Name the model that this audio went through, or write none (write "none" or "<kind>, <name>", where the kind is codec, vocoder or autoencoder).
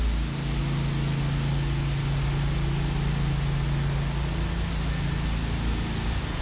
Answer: none